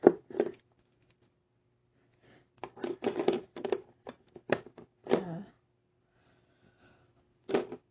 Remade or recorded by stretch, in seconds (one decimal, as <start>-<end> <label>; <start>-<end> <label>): 0.0-6.8 recorded; 6.8-7.5 remade; 7.5-7.9 recorded